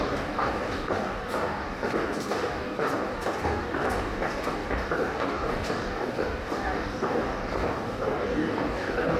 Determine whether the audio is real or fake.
fake